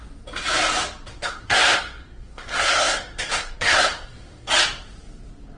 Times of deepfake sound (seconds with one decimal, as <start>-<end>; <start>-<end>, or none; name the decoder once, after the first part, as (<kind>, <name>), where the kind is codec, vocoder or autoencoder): 1.1-4.5 (codec, SNAC)